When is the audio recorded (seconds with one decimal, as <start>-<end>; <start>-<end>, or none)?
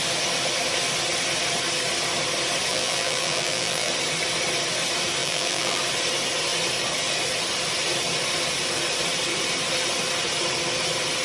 0.0-2.7; 3.9-5.2; 5.8-11.2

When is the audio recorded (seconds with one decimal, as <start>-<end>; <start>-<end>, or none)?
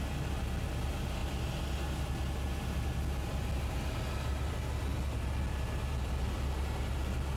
0.0-7.4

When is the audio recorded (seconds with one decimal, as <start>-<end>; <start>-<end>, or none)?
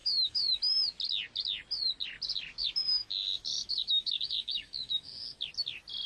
0.6-2.9; 5.5-6.1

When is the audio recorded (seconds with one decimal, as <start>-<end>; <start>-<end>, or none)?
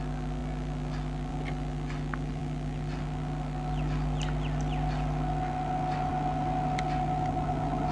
0.0-7.9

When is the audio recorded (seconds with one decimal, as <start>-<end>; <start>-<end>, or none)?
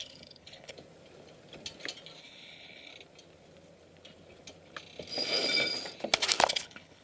0.7-2.2; 2.9-6.5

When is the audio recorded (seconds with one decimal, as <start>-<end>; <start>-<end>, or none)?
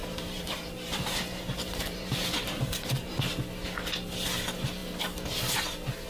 3.2-6.1